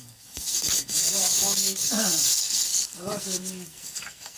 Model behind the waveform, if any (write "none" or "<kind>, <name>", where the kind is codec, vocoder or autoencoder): codec, SNAC